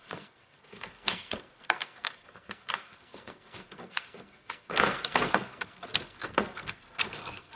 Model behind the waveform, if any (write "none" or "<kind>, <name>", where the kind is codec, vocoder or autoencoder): codec, SNAC